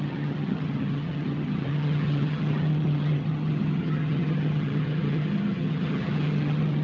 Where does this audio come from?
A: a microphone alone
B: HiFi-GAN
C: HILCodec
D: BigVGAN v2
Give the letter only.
B